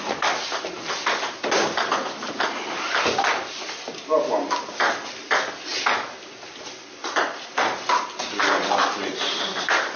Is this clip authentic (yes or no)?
yes